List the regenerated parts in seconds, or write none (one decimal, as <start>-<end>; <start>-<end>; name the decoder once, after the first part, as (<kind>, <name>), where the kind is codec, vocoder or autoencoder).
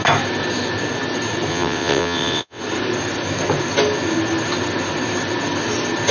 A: 1.5-2.6 (vocoder, WaveNeXt)